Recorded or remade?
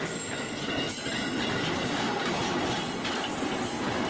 recorded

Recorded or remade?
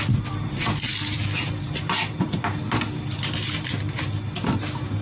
recorded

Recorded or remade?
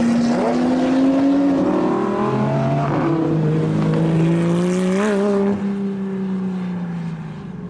recorded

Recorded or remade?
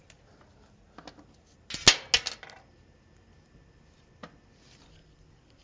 recorded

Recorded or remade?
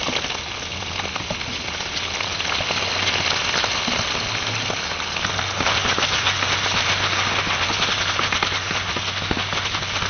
recorded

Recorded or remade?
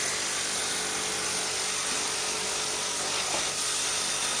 recorded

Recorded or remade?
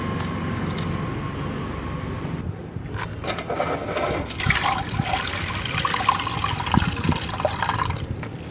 recorded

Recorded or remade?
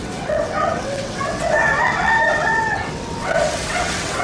remade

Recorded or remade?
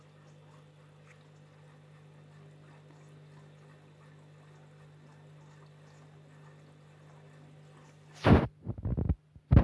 recorded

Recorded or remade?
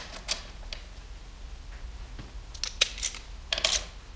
recorded